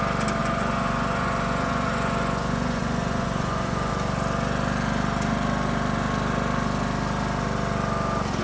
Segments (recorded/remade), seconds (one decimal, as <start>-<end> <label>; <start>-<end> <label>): 0.0-0.4 recorded; 0.4-3.9 remade; 3.9-8.4 recorded